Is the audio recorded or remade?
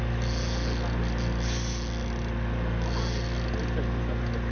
recorded